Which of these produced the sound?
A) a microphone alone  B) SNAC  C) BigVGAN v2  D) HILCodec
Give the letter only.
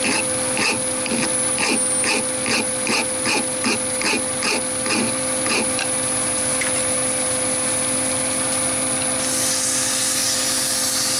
A